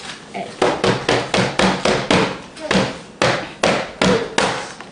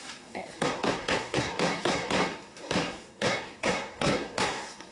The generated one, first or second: second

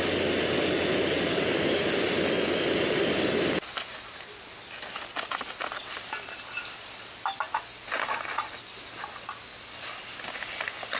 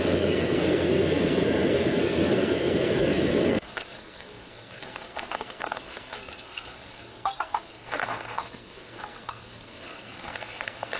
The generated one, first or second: second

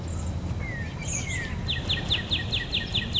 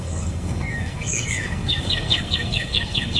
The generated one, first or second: second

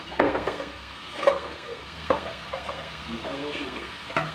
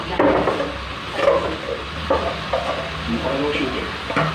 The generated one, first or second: first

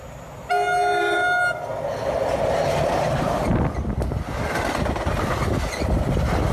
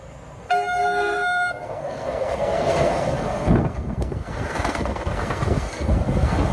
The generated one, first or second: second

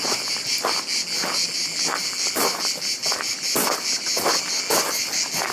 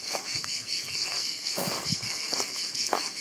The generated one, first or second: second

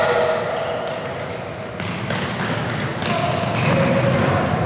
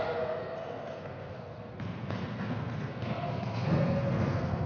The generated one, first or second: second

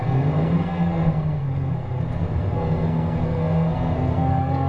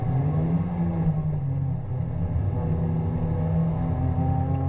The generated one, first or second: first